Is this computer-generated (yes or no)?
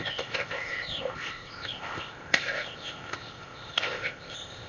yes